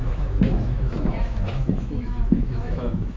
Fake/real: fake